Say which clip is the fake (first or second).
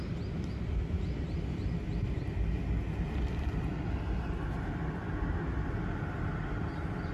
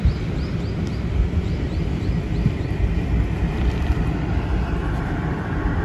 second